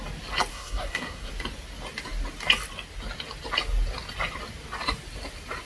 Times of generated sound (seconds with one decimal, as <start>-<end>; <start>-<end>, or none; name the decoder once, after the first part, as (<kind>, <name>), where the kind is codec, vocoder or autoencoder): 0.5-1.3 (codec, SNAC)